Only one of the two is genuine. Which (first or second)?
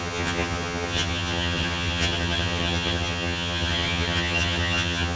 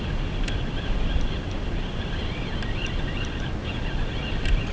second